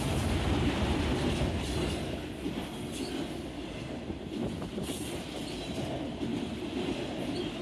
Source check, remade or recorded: recorded